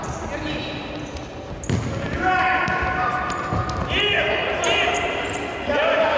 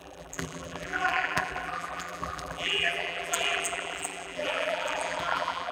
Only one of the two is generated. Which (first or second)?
second